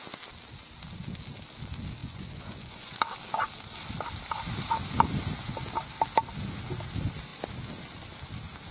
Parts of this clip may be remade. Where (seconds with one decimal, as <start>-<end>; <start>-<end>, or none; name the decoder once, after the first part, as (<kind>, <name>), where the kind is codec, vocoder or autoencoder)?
2.0-2.9 (vocoder, Vocos)